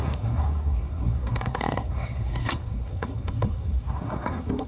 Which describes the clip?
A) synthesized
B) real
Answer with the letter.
A